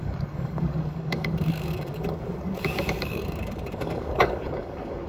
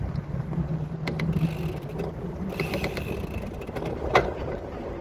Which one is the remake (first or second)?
first